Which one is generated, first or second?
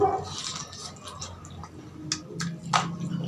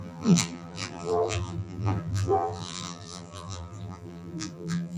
second